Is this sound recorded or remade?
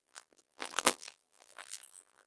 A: remade